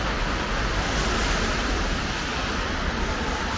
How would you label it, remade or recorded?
recorded